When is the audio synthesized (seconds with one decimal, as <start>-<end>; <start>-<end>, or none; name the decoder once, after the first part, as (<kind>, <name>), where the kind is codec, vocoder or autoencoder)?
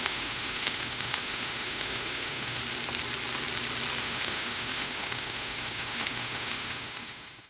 0.0-2.6 (autoencoder, DAC-VAE); 4.0-7.5